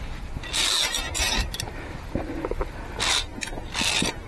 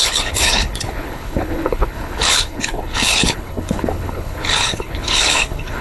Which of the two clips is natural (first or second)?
first